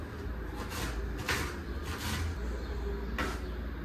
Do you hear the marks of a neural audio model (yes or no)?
no